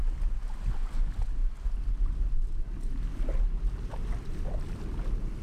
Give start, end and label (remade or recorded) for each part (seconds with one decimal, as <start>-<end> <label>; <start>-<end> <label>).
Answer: 0.0-5.4 recorded

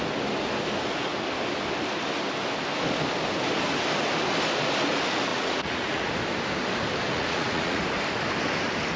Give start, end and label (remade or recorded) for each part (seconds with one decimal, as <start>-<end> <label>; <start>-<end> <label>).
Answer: 0.0-5.3 recorded; 5.3-6.1 remade; 6.1-7.1 recorded; 7.1-7.8 remade; 7.8-9.0 recorded

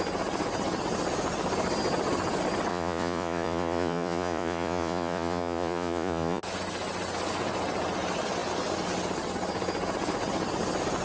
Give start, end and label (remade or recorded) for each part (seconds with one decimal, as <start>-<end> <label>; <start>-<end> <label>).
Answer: 0.0-2.7 recorded; 2.7-6.4 remade; 6.4-11.0 recorded